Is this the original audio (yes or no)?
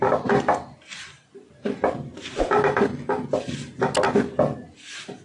yes